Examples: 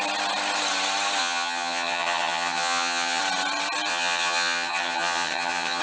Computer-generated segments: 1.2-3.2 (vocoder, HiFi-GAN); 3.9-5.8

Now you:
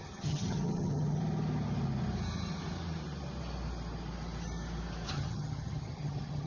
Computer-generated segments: 0.0-1.2 (vocoder, HiFi-GAN); 5.1-6.5